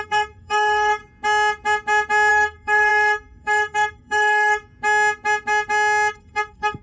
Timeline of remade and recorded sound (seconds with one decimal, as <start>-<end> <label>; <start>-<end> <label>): 0.0-1.0 remade; 1.0-2.3 recorded; 2.3-4.6 remade; 4.6-6.1 recorded; 6.1-6.8 remade